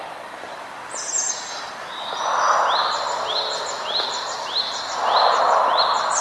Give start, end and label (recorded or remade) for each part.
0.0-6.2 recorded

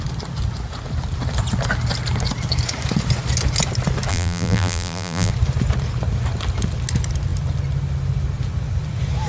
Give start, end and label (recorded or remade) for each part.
0.0-4.1 recorded; 4.1-5.3 remade; 5.3-9.3 recorded

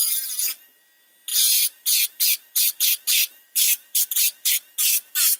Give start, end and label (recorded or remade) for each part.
0.0-0.5 remade; 0.5-1.3 recorded; 1.3-4.5 remade; 4.5-5.4 recorded